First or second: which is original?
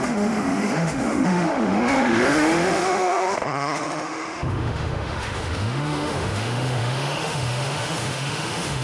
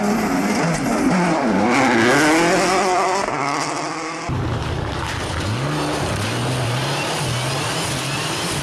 second